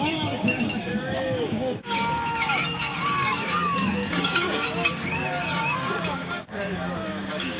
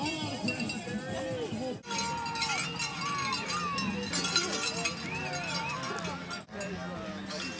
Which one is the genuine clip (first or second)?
second